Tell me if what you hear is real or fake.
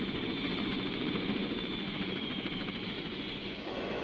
fake